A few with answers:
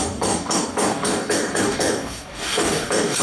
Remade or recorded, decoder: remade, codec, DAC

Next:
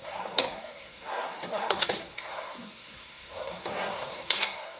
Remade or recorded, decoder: remade, codec, SNAC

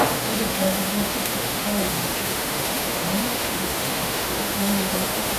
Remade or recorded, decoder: remade, autoencoder, DAC-VAE